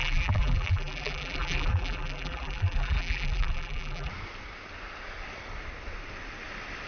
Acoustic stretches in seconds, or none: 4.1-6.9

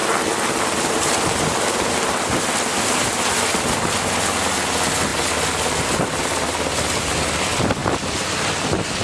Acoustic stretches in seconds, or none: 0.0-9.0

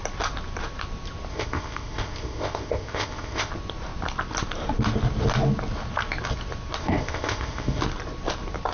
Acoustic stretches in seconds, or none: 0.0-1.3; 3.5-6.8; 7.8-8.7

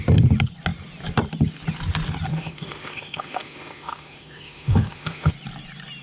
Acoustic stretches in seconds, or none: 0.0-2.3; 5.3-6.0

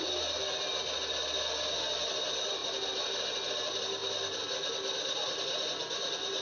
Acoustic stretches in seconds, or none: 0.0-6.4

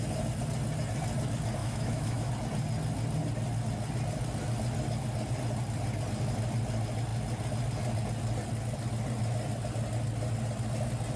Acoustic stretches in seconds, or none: 0.0-1.6; 2.3-11.2